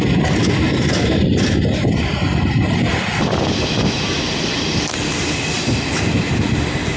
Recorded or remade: recorded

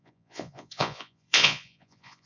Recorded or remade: remade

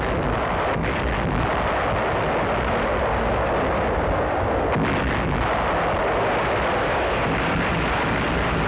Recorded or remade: recorded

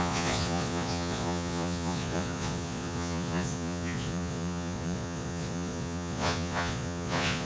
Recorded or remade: remade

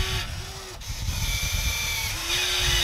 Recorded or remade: recorded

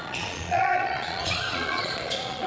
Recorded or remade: remade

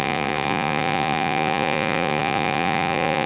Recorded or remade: remade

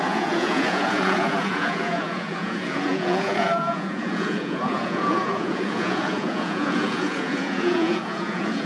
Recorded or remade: remade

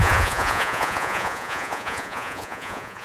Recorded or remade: remade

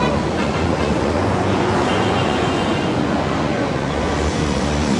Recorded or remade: remade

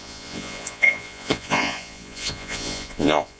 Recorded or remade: remade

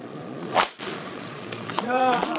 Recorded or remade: remade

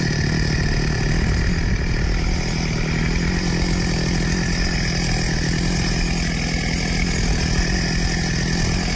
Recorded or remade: recorded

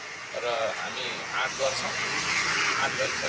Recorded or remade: remade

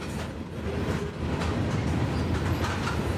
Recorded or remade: recorded